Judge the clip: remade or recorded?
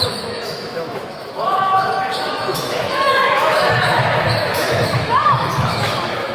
remade